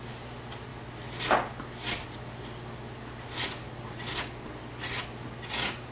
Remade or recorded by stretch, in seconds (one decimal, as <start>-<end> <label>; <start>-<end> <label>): 0.0-5.9 recorded